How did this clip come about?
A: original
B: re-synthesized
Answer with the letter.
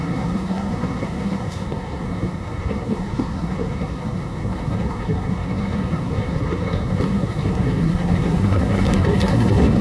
B